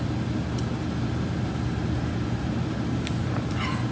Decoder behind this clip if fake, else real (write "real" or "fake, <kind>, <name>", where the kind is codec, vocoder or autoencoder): real